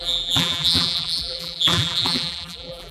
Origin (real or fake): fake